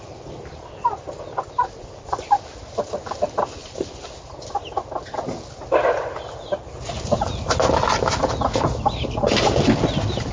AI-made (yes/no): no